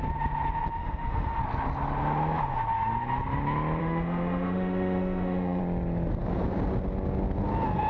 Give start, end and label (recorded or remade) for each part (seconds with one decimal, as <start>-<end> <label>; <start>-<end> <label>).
0.0-0.8 recorded; 0.8-1.4 remade; 1.4-3.8 recorded; 3.8-5.6 remade; 5.6-7.9 recorded